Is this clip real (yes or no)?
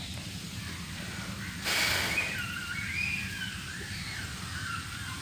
yes